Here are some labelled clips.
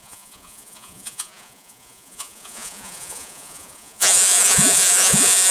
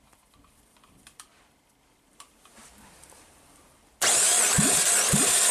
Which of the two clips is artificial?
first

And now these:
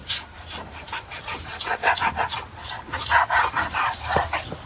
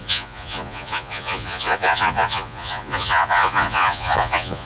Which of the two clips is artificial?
second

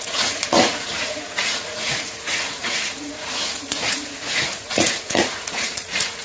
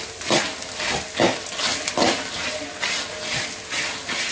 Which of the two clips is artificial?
first